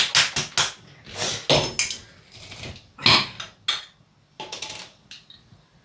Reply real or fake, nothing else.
real